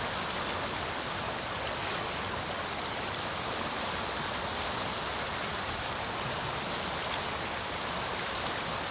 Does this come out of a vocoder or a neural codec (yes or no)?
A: no